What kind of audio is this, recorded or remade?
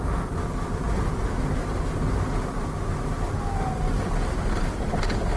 recorded